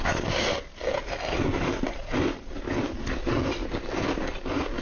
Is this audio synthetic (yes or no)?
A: no